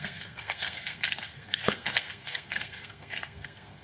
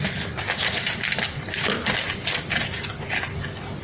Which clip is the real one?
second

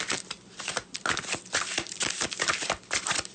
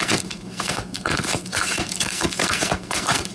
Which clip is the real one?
first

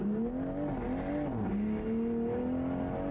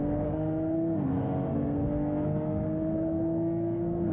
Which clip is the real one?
first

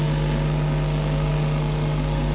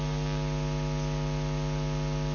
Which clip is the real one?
second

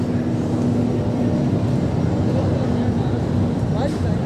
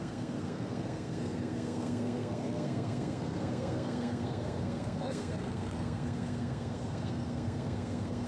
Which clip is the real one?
first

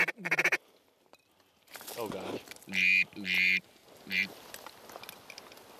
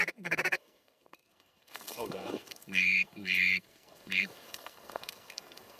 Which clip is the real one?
first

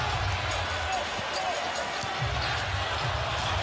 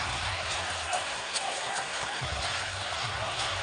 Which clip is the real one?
first